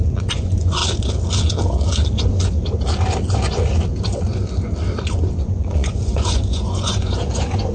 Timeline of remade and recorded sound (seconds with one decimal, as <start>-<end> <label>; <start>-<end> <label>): 0.0-0.8 remade; 0.8-5.4 recorded; 5.4-7.7 remade